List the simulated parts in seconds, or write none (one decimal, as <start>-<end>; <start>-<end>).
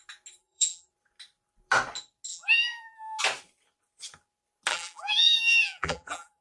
0.4-0.9; 2.3-3.2; 4.7-6.4